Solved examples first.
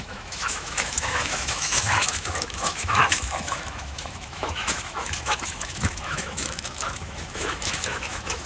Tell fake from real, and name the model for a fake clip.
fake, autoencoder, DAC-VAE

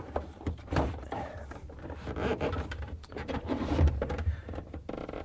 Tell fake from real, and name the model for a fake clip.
fake, vocoder, BigVGAN v2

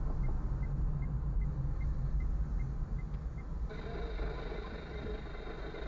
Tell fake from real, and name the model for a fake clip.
real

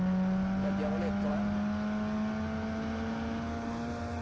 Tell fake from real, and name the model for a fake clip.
real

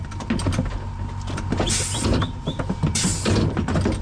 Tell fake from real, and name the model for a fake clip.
real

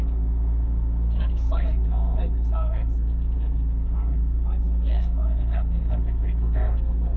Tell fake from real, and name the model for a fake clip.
fake, codec, SNAC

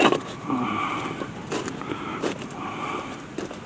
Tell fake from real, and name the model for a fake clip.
fake, vocoder, BigVGAN v2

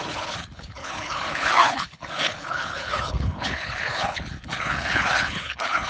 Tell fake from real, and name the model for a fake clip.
fake, codec, HILCodec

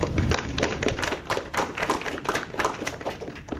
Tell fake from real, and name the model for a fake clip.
fake, vocoder, BigVGAN v2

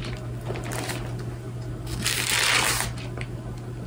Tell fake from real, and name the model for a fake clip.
real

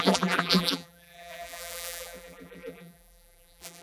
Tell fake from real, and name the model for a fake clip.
fake, vocoder, BigVGAN v2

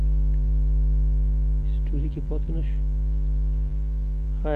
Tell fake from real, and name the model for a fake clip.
fake, vocoder, BigVGAN v2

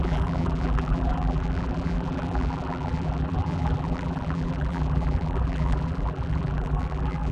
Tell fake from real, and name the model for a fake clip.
fake, vocoder, BigVGAN v2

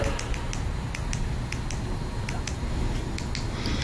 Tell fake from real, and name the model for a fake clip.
real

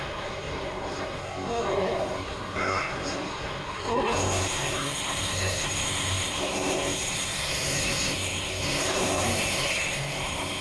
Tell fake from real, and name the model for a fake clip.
fake, codec, SNAC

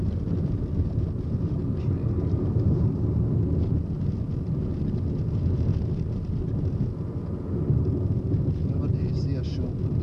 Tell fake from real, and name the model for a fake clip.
real